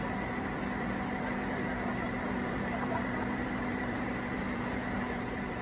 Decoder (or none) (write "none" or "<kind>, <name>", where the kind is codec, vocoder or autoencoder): vocoder, BigVGAN v2